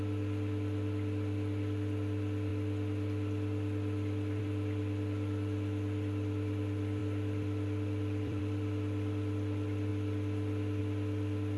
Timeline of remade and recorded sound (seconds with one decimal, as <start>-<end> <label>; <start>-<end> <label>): 0.0-9.9 remade; 9.9-10.8 recorded; 10.8-11.6 remade